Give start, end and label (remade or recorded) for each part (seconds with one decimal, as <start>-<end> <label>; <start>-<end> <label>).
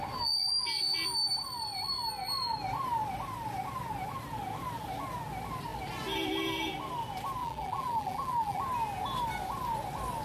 0.0-7.4 recorded; 7.4-8.6 remade; 8.6-10.2 recorded